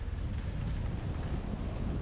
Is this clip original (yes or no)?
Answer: yes